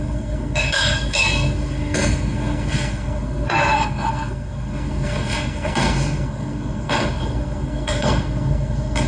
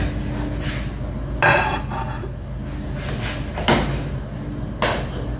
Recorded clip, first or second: second